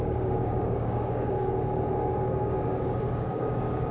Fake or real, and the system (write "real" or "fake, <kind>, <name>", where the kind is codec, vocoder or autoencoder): fake, codec, DAC